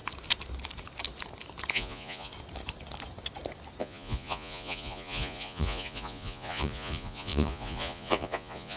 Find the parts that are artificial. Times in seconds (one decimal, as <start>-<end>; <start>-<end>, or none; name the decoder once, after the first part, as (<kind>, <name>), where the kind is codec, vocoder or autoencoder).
1.7-2.3 (vocoder, Vocos); 3.8-8.8